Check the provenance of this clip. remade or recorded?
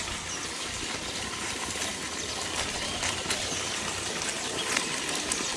recorded